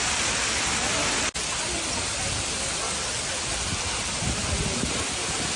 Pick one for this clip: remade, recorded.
recorded